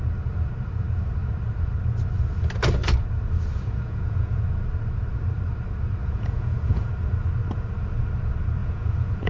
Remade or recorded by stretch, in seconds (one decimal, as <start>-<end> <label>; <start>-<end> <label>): 0.0-3.5 recorded; 3.5-4.4 remade; 4.4-6.0 recorded; 6.0-6.9 remade; 6.9-8.6 recorded; 8.6-9.3 remade

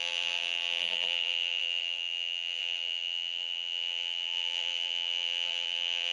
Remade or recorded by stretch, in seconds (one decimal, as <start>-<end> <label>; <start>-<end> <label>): 0.0-6.1 remade

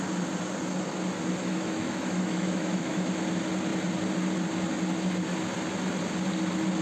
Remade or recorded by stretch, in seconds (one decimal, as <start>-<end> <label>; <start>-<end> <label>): 0.0-1.4 recorded; 1.4-3.1 remade; 3.1-6.8 recorded

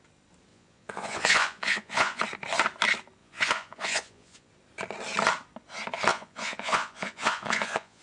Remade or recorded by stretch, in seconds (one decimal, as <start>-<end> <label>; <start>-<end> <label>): 0.0-0.5 recorded; 0.5-2.2 remade; 2.2-3.2 recorded; 3.2-4.5 remade; 4.5-6.1 recorded; 6.1-8.0 remade

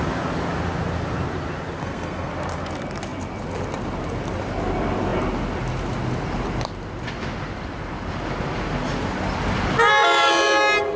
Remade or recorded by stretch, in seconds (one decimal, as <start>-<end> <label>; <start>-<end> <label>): 0.0-1.8 recorded; 1.8-2.3 remade; 2.3-11.0 recorded

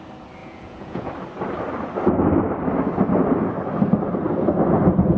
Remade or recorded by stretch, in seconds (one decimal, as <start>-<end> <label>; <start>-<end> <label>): 0.0-0.4 recorded; 0.4-1.1 remade; 1.1-5.2 recorded

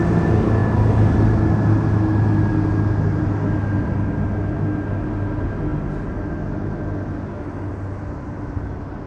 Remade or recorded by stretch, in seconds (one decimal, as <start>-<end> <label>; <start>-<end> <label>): 0.0-9.1 recorded